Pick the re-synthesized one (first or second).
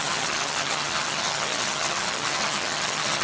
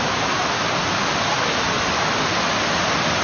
first